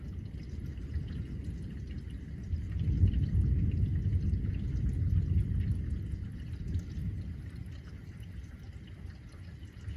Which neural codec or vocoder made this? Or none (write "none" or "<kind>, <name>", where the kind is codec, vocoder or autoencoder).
none